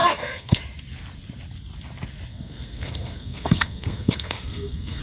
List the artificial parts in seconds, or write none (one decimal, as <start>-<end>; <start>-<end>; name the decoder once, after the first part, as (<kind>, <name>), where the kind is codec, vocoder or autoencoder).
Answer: 0.0-0.6 (codec, SNAC); 2.3-5.0